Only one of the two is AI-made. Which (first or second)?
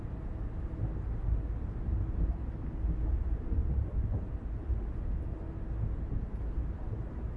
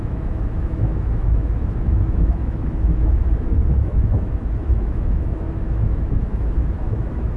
second